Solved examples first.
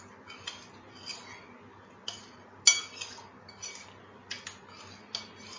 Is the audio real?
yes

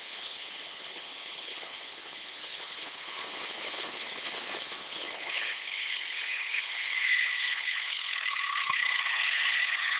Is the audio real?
no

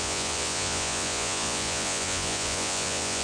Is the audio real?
no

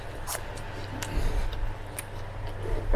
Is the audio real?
yes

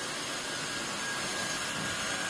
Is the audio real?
yes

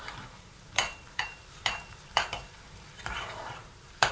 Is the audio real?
no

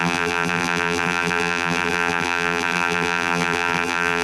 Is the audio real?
no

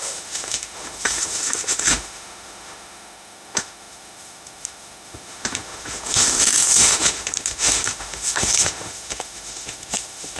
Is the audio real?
no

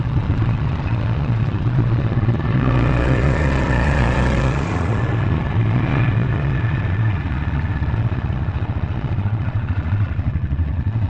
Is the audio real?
no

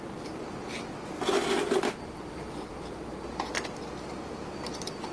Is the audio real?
yes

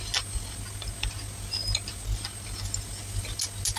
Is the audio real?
yes